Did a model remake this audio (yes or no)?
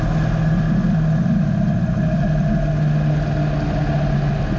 no